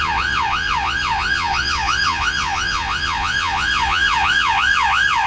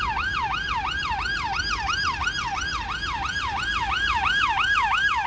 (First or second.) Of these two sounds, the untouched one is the second